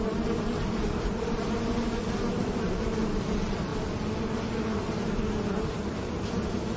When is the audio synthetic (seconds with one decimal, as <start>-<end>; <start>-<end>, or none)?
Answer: 0.0-3.7; 5.5-6.8